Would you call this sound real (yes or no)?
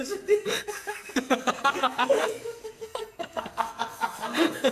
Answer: no